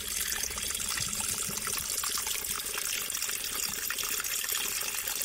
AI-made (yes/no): no